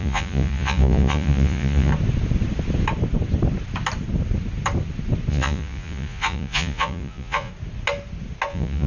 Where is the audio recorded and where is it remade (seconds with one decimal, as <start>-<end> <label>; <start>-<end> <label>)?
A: 0.0-1.9 remade; 1.9-5.3 recorded; 5.3-7.5 remade; 7.5-8.5 recorded; 8.5-8.9 remade

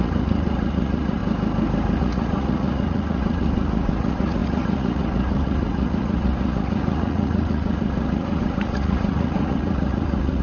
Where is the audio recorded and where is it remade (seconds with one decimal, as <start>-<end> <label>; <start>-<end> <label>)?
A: 0.0-1.2 remade; 1.2-2.0 recorded; 2.0-10.4 remade

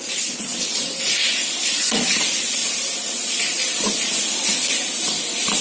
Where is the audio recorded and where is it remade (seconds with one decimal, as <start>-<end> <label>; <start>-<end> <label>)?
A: 0.0-1.2 remade; 1.2-1.7 recorded; 1.7-2.6 remade; 2.6-5.6 recorded

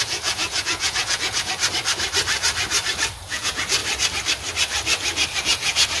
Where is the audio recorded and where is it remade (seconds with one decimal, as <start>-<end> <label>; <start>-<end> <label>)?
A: 0.0-1.5 remade; 1.5-3.2 recorded; 3.2-3.8 remade; 3.8-5.4 recorded; 5.4-6.0 remade

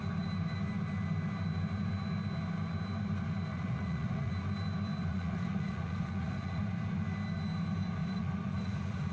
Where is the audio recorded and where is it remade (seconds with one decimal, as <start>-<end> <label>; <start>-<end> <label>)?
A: 0.0-3.5 recorded; 3.5-4.3 remade; 4.3-5.1 recorded; 5.1-6.6 remade; 6.6-8.0 recorded; 8.0-9.1 remade

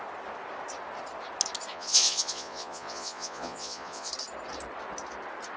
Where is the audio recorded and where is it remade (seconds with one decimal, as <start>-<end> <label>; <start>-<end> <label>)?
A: 0.0-1.7 recorded; 1.7-4.1 remade; 4.1-5.6 recorded

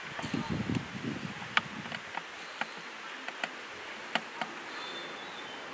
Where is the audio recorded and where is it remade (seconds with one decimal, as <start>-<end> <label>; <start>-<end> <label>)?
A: 0.0-5.7 recorded

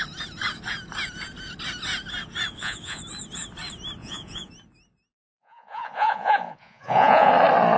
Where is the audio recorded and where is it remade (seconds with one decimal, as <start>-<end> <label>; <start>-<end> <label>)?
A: 0.0-2.5 recorded; 2.5-3.0 remade; 3.0-4.0 recorded; 4.0-4.5 remade; 4.5-5.3 recorded; 5.3-7.3 remade; 7.3-7.8 recorded